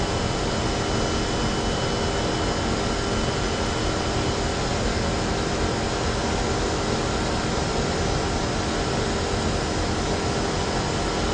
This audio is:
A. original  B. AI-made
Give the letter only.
A